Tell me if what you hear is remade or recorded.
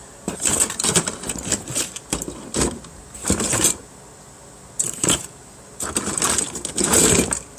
recorded